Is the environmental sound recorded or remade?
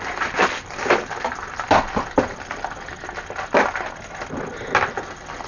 recorded